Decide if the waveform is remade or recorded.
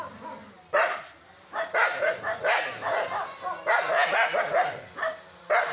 recorded